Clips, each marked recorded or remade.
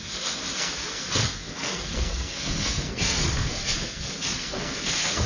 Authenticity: remade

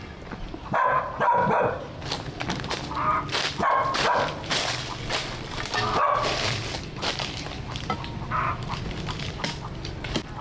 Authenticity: remade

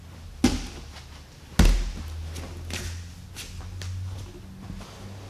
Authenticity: recorded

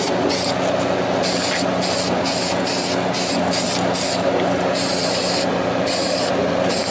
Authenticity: recorded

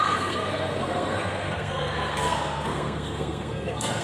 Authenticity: remade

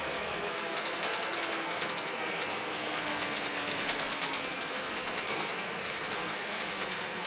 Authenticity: remade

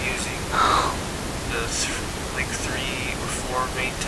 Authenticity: recorded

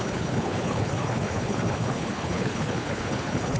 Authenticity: remade